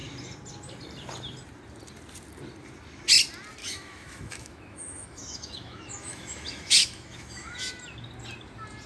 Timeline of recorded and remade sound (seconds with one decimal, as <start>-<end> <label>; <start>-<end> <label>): 0.0-3.6 recorded; 3.6-7.7 remade; 7.7-8.9 recorded